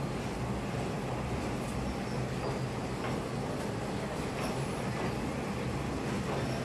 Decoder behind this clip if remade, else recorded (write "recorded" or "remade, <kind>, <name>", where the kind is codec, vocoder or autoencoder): recorded